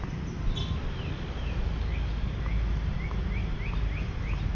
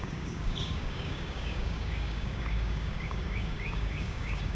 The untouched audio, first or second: first